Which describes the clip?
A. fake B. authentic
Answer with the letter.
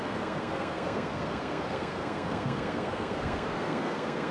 A